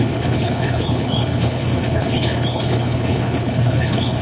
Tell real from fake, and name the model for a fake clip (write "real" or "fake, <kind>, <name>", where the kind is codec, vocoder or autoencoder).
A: fake, codec, HILCodec